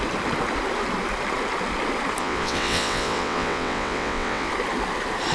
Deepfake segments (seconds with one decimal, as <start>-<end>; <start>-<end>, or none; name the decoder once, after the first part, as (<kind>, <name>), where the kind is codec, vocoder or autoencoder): 2.2-4.5 (vocoder, WaveNeXt)